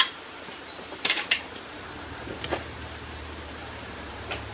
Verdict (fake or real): fake